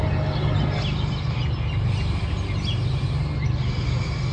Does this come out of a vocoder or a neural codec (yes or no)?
no